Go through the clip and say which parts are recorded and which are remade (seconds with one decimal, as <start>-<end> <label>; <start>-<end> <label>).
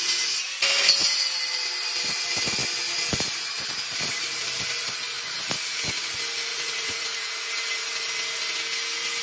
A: 0.0-6.5 recorded; 6.5-7.5 remade; 7.5-9.2 recorded